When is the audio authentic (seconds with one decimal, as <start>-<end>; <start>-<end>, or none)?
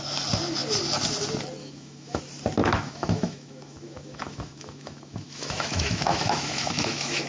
0.0-1.6; 2.2-2.6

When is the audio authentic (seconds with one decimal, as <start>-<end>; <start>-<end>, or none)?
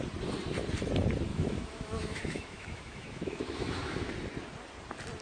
0.0-1.3; 4.1-5.2